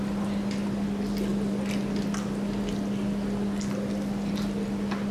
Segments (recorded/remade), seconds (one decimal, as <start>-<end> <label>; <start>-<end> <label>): 0.0-5.1 recorded